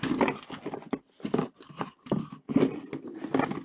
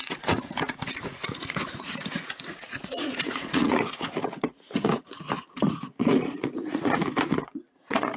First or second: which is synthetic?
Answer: second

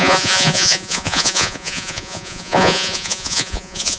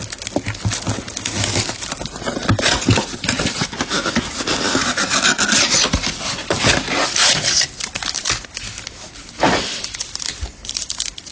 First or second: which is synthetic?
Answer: first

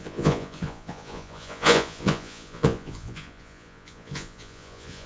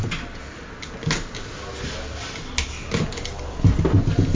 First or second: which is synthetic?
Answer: first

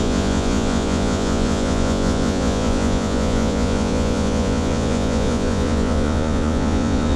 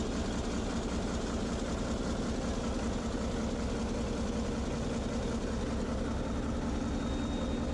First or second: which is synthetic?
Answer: first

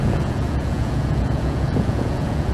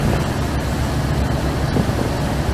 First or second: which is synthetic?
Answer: first